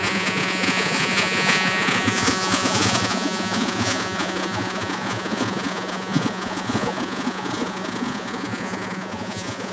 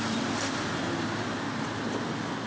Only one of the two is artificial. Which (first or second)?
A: first